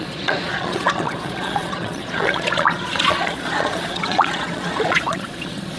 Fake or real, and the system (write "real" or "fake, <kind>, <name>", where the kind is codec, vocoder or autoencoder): fake, vocoder, Vocos